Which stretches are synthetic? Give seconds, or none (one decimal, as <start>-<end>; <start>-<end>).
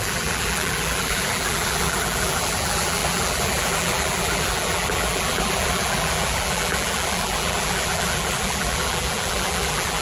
0.0-10.0